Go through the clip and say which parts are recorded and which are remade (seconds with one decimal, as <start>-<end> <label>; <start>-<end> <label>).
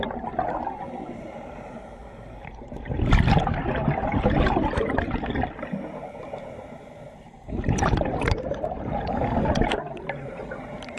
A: 0.0-2.0 remade; 2.0-5.9 recorded; 5.9-11.0 remade